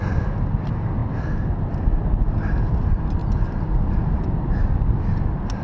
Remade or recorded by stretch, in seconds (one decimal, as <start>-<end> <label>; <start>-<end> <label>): 0.0-5.6 recorded